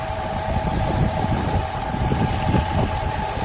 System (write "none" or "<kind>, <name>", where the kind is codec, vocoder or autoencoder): none